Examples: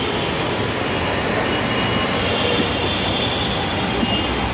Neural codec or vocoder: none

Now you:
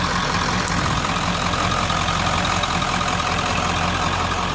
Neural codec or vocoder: vocoder, BigVGAN v2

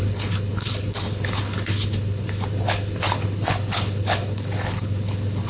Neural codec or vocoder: codec, HILCodec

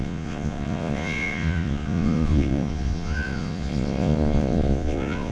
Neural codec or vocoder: vocoder, Vocos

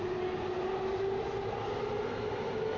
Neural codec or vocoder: none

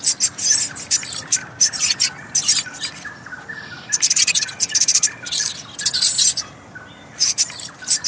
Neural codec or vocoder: none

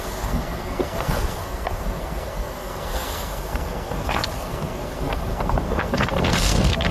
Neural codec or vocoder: codec, SNAC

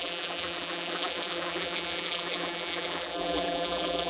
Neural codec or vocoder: vocoder, BigVGAN v2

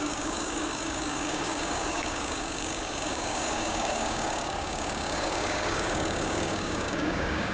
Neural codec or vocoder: codec, DAC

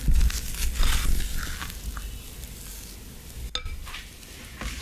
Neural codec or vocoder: none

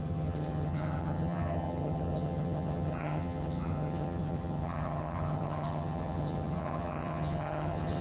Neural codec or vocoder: vocoder, HiFi-GAN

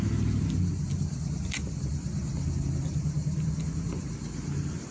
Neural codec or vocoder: none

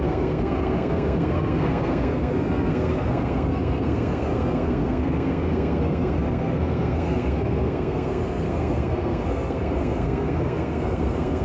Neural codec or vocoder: codec, SNAC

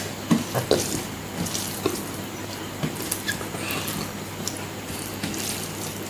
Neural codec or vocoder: vocoder, BigVGAN v2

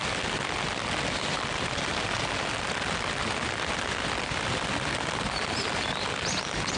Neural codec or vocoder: none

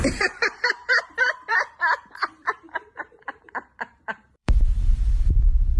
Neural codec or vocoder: vocoder, BigVGAN v2